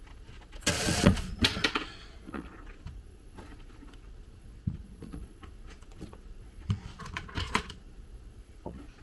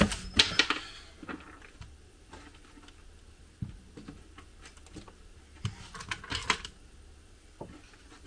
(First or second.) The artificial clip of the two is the first